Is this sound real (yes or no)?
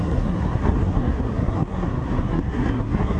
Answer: no